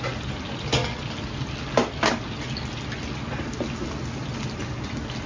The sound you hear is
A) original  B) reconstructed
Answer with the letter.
A